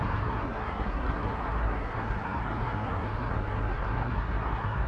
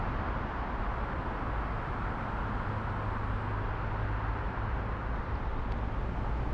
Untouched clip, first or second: second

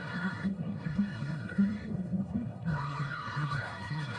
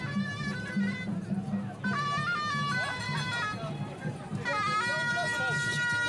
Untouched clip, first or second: second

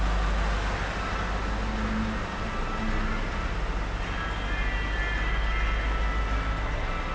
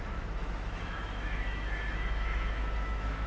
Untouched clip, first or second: first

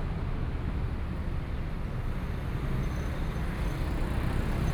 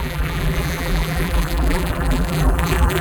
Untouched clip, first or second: first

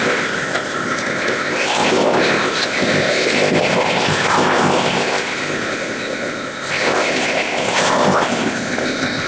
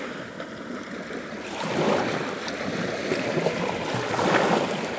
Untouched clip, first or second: second